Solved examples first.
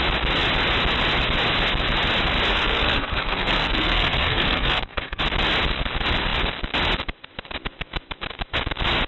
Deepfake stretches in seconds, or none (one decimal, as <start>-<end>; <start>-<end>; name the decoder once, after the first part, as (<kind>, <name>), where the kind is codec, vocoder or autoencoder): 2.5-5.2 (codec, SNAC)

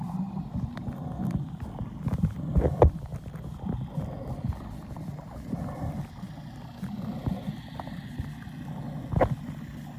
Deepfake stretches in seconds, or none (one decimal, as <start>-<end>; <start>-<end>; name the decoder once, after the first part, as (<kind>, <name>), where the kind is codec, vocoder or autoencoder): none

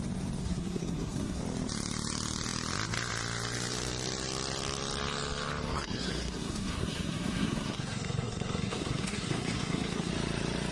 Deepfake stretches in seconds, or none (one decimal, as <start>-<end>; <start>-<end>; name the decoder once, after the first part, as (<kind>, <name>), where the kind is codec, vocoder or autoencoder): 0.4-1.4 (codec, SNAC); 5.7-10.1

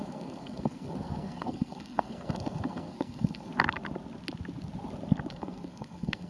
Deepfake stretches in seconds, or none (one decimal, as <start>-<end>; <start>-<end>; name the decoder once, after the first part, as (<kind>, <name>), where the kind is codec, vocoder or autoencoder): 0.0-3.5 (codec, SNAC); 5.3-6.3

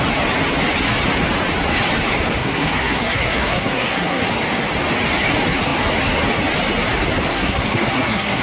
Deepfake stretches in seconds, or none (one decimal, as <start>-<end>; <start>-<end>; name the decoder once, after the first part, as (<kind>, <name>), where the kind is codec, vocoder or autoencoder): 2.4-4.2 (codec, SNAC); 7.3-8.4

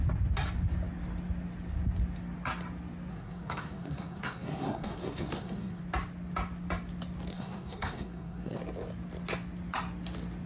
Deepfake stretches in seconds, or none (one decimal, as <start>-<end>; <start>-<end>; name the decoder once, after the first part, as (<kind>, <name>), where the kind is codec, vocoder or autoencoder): 3.1-5.8 (codec, SNAC); 7.3-8.6